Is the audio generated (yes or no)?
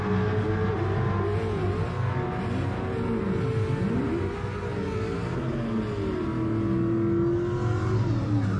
no